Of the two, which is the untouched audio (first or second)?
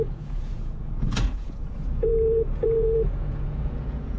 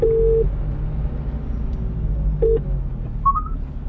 second